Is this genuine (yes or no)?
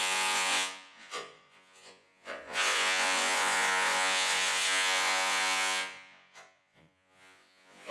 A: no